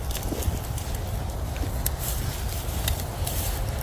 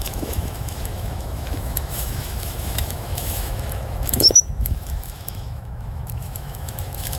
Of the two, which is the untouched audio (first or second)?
first